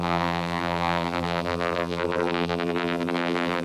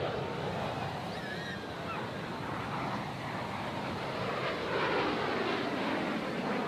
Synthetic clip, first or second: first